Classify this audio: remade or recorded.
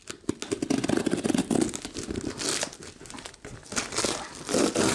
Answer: recorded